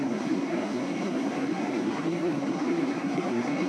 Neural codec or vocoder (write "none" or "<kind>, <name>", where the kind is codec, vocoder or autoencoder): codec, SNAC